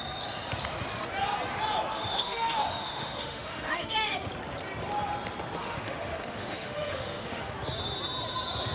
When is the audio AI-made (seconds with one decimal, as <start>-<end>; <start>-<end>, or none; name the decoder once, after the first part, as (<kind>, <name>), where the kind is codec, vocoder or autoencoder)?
1.9-4.3 (autoencoder, DAC-VAE); 5.6-7.5

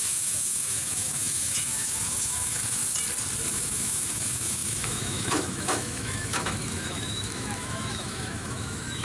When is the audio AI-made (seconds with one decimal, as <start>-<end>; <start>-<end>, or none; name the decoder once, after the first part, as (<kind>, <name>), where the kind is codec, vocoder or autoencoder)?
0.0-2.8 (autoencoder, DAC-VAE); 3.5-9.0

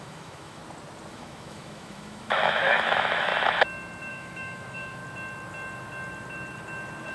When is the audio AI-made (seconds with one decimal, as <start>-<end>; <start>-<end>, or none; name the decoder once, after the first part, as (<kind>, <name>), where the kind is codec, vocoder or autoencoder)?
0.0-0.6 (autoencoder, DAC-VAE); 1.1-3.3; 4.1-5.0